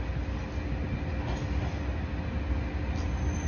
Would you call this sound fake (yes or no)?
no